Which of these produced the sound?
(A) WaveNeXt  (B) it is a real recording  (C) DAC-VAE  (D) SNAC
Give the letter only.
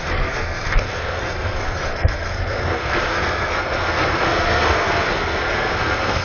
D